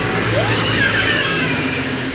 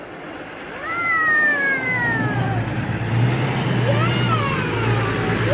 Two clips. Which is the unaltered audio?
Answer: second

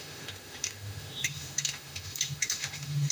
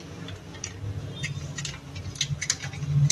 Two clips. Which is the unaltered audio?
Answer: second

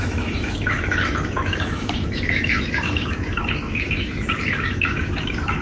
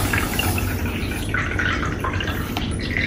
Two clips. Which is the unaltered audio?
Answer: second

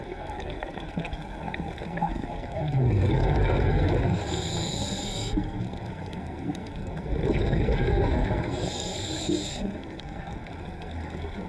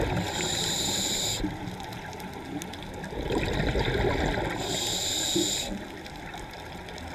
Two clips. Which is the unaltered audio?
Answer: second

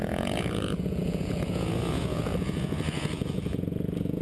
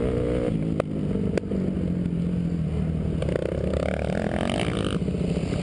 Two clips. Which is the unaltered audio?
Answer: second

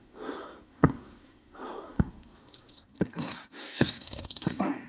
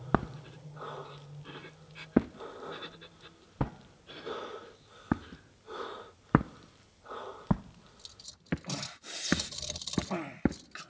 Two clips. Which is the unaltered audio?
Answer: second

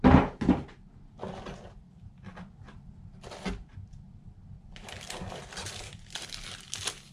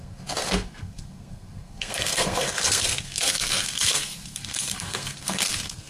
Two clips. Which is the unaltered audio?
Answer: first